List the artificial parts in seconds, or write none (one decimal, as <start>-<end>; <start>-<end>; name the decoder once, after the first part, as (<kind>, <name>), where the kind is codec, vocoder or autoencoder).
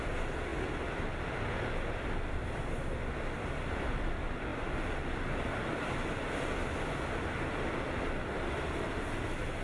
none